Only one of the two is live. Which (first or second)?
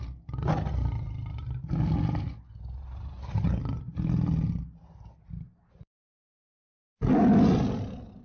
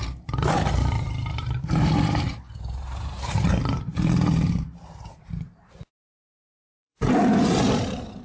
first